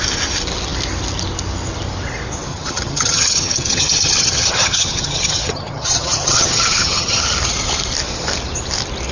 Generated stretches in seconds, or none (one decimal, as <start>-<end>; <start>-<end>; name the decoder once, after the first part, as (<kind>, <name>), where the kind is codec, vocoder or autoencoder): 2.5-7.2 (vocoder, HiFi-GAN)